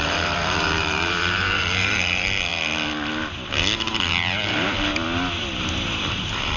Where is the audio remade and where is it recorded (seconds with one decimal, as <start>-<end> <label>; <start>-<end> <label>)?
0.0-2.5 remade; 2.5-4.1 recorded; 4.1-4.9 remade; 4.9-5.6 recorded; 5.6-6.6 remade